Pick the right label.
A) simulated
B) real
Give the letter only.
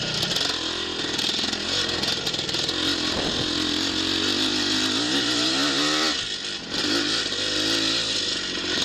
B